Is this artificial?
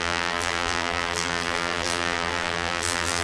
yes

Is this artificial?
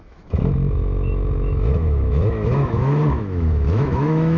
yes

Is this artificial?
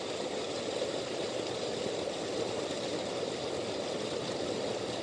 no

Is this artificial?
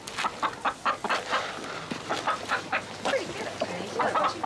no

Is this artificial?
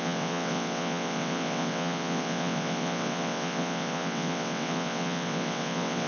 yes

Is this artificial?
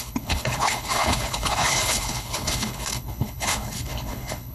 yes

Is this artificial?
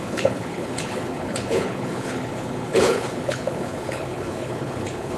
yes